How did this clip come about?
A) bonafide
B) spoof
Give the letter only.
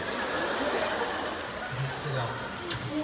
A